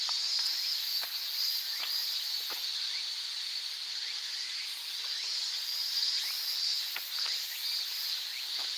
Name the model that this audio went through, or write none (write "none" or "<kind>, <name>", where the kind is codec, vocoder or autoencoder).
none